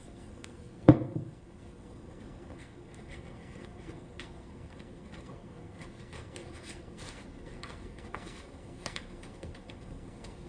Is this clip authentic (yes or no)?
no